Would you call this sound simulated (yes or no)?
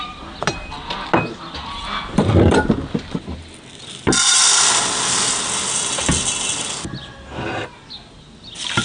no